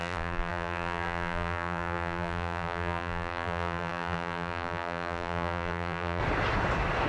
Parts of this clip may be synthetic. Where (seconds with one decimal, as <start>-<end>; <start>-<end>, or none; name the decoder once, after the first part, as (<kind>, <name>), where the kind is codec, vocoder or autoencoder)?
0.0-6.2 (vocoder, BigVGAN v2)